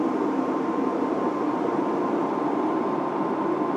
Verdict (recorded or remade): remade